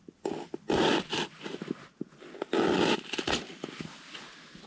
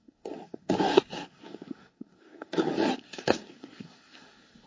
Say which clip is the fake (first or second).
second